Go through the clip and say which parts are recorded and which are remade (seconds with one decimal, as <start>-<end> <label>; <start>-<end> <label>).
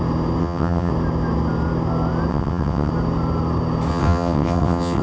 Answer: 0.0-0.4 recorded; 0.4-0.9 remade; 0.9-2.3 recorded; 2.3-2.9 remade; 2.9-3.9 recorded; 3.9-5.0 remade